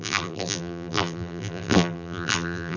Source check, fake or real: fake